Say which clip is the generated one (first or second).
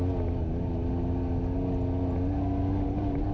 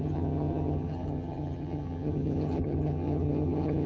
second